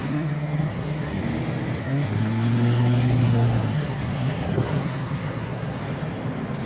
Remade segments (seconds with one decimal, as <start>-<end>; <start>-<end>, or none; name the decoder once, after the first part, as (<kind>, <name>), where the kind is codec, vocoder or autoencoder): 0.0-1.2 (codec, SNAC); 1.8-5.8